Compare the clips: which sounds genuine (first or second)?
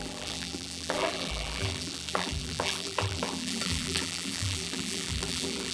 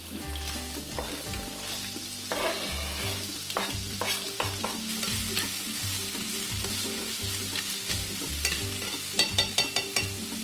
second